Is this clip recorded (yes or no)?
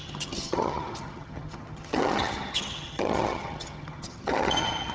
no